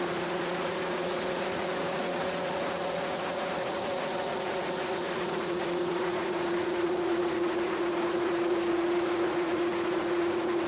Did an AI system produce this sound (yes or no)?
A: yes